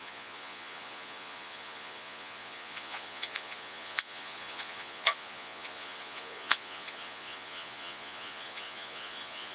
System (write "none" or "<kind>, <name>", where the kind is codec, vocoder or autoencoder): vocoder, Vocos